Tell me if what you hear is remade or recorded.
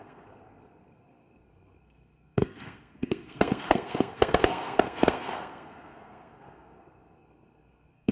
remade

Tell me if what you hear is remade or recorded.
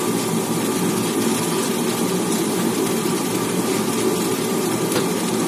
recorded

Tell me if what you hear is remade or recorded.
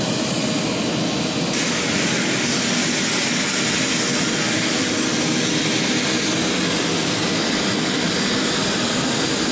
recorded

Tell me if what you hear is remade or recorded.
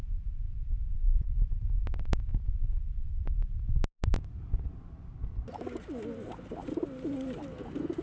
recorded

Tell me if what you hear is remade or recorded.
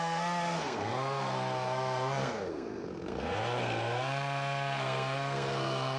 remade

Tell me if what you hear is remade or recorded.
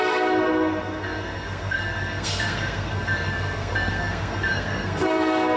remade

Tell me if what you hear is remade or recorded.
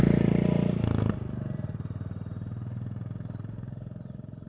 recorded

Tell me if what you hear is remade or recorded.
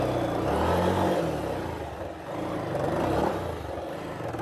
recorded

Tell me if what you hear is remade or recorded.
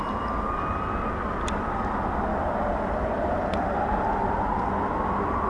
recorded